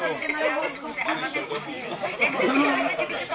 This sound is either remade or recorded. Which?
recorded